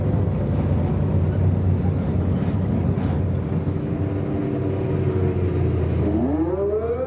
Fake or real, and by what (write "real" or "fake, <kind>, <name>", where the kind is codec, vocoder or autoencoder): real